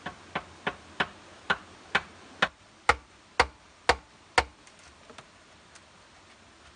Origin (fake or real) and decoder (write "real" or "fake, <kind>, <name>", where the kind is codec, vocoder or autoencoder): real